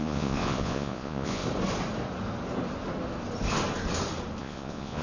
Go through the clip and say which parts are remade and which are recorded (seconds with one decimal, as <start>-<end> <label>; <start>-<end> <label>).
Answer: 0.0-1.4 remade; 1.4-4.4 recorded; 4.4-5.0 remade